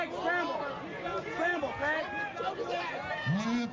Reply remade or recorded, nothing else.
recorded